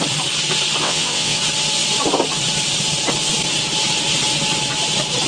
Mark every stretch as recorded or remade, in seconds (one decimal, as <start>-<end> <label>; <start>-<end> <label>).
0.0-0.8 recorded; 0.8-1.4 remade; 1.4-5.3 recorded